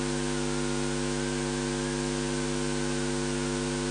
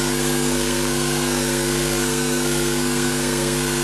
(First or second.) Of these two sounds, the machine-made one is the second